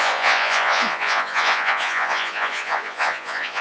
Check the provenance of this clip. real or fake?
fake